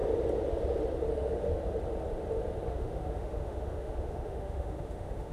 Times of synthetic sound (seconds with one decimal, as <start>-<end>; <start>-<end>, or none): 1.1-1.5; 2.7-5.3